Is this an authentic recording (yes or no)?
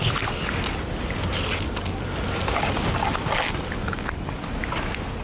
yes